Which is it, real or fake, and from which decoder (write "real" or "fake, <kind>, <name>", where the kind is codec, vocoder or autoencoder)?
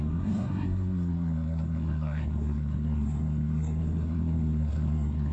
fake, codec, SNAC